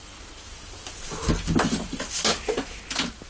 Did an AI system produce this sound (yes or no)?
no